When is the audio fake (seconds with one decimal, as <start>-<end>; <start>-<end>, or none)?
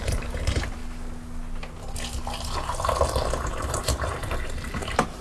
0.0-0.8; 3.7-5.2